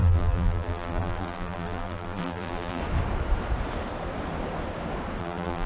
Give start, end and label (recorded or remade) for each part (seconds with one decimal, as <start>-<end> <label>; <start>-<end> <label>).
0.0-2.8 remade; 2.8-5.2 recorded; 5.2-5.7 remade